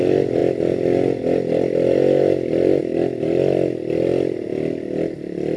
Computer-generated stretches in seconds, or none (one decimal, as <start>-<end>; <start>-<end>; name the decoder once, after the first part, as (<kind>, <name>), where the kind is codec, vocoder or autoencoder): none